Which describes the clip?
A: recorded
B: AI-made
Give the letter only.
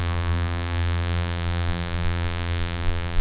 B